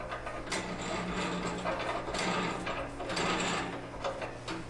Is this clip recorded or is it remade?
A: recorded